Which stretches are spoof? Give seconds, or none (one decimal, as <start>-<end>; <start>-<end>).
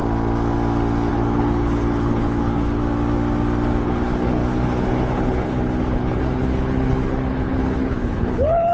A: 1.1-2.8; 3.8-8.7